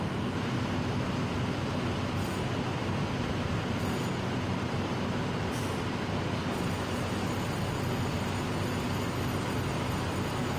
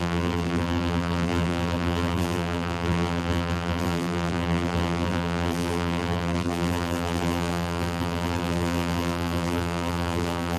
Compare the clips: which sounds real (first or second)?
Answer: first